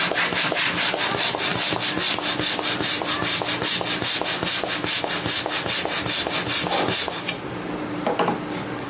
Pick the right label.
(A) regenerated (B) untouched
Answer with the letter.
B